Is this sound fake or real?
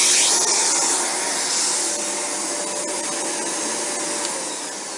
real